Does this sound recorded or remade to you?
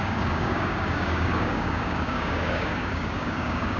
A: remade